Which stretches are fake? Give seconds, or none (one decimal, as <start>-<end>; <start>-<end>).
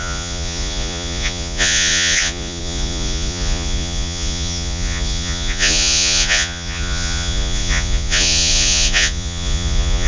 0.0-10.1